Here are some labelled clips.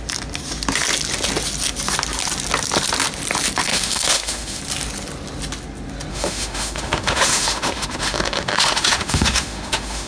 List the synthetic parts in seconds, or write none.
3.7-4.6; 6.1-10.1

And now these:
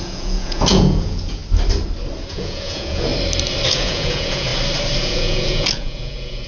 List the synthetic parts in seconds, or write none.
0.0-1.4; 2.3-3.1; 3.7-4.5; 5.0-6.5

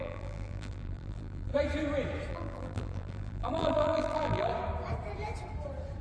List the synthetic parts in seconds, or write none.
0.0-1.5; 2.3-4.5

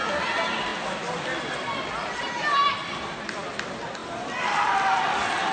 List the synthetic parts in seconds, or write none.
none

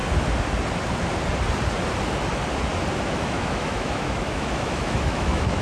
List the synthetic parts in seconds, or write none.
3.0-5.6